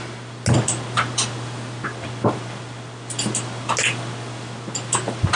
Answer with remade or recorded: recorded